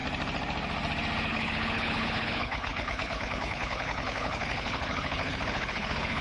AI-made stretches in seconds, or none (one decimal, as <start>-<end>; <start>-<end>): 1.3-6.2